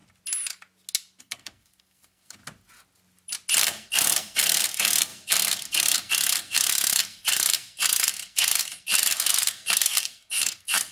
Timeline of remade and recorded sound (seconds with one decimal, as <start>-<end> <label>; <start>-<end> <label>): 0.0-1.2 recorded; 1.2-2.4 remade; 2.4-3.6 recorded; 3.6-10.9 remade

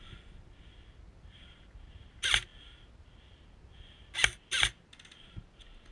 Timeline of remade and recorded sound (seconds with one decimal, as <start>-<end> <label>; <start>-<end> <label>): 0.0-5.9 recorded

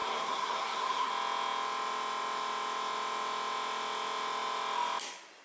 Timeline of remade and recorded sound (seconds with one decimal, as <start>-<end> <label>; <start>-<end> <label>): 0.0-1.1 remade; 1.1-5.4 recorded